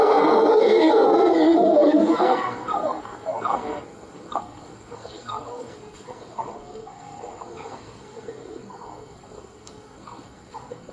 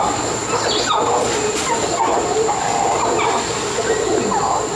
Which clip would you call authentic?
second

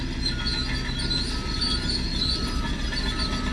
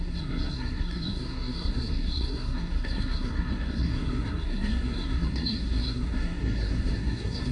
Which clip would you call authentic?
first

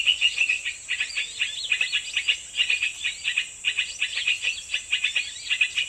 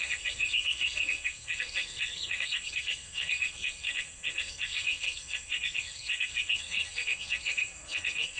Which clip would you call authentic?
first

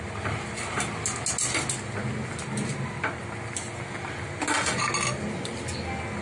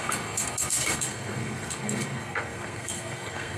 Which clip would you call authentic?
first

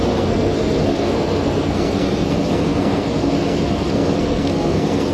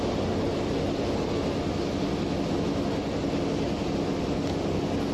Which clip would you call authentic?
second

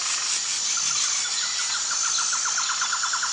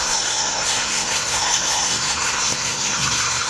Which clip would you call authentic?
first